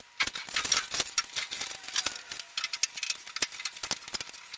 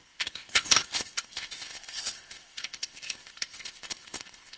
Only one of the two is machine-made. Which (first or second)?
second